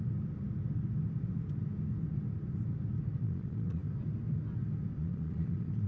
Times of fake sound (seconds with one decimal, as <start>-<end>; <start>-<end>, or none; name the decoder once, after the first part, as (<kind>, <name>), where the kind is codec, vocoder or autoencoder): 3.2-3.8 (vocoder, Vocos); 5.0-5.9